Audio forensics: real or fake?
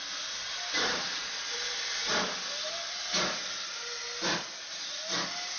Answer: real